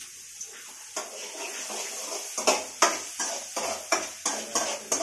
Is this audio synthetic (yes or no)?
no